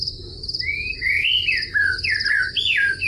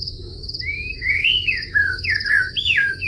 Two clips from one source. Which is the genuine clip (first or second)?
first